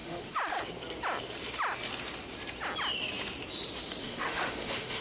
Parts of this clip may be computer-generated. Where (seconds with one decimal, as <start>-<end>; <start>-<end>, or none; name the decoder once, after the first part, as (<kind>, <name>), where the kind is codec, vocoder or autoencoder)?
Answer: 0.0-0.6 (autoencoder, DAC-VAE); 4.0-5.0